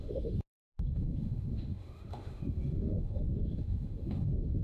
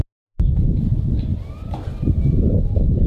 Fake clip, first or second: first